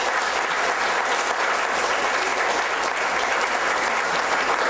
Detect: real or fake real